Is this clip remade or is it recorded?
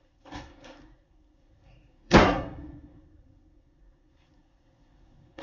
remade